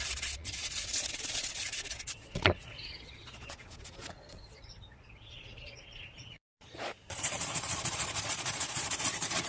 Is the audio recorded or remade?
remade